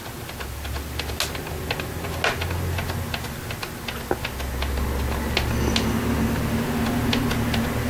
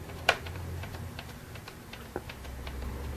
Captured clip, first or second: first